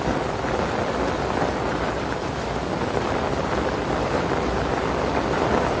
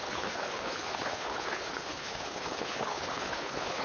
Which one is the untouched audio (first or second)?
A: first